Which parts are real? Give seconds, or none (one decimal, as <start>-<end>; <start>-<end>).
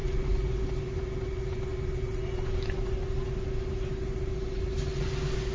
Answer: 0.0-5.5